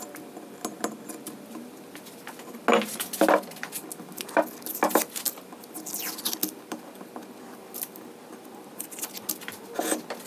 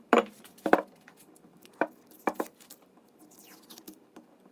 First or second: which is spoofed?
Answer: second